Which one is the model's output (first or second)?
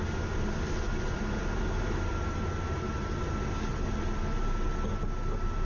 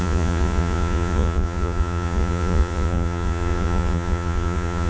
second